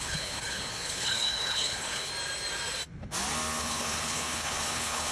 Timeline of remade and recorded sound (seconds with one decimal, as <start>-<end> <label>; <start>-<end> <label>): 0.0-2.1 remade; 2.1-3.6 recorded; 3.6-5.1 remade